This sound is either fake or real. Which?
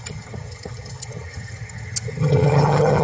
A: fake